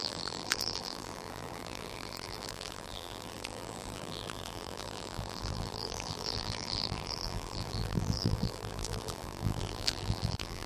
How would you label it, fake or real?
fake